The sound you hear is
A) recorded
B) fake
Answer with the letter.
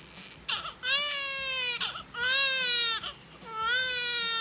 A